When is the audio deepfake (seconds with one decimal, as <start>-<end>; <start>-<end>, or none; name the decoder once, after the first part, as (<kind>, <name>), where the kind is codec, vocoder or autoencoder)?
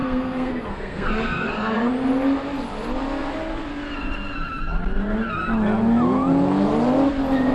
0.0-1.9 (codec, SNAC)